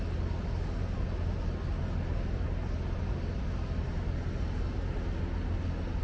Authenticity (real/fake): real